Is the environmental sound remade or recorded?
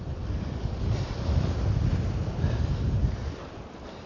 recorded